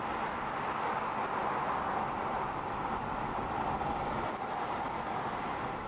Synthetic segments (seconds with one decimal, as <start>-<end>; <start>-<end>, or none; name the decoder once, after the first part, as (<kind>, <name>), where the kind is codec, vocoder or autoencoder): none